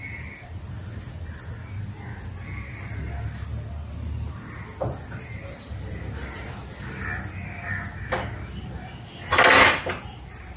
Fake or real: real